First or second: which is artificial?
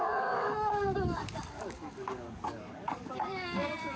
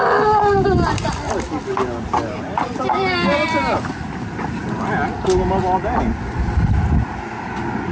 first